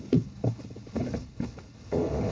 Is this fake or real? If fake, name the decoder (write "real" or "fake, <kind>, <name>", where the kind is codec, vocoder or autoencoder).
fake, codec, HILCodec